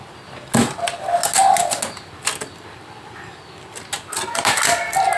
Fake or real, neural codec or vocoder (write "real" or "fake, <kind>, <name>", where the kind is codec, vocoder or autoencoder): real